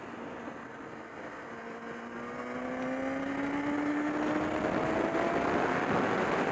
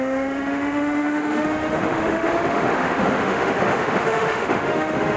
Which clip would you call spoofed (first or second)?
second